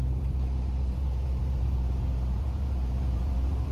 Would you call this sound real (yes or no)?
no